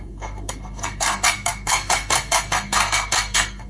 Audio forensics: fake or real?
fake